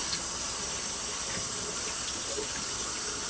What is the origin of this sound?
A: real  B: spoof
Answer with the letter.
A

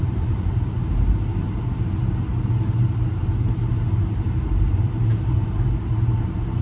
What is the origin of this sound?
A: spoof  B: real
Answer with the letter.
A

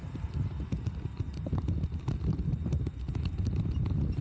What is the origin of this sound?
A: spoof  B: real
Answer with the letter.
B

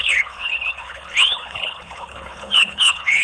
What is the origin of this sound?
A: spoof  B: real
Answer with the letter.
A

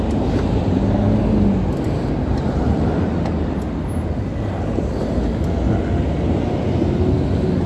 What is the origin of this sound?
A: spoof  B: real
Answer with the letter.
B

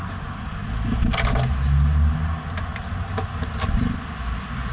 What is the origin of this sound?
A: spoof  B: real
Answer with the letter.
B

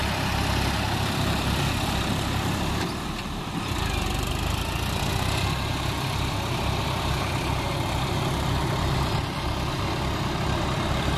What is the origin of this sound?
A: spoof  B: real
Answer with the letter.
A